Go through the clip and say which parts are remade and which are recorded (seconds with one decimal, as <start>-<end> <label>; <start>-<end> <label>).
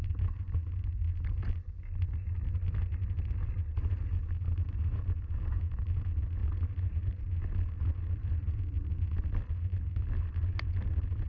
0.0-3.7 recorded; 3.7-5.6 remade; 5.6-11.3 recorded